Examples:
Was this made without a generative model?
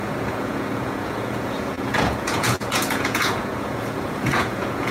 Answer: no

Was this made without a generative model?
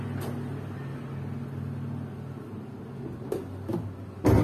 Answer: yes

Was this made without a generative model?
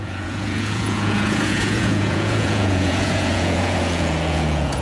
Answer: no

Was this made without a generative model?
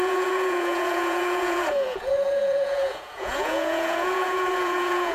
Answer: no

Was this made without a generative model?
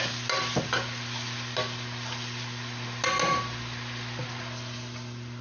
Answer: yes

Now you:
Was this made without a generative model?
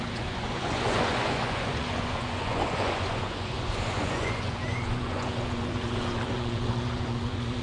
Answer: no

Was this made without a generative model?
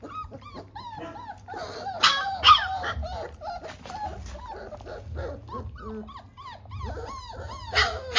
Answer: yes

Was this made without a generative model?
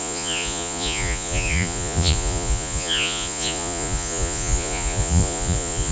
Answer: no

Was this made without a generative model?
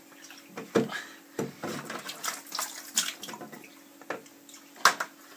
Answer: yes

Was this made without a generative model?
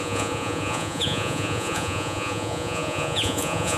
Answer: no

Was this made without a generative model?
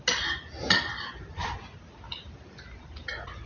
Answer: yes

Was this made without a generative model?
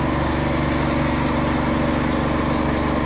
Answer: yes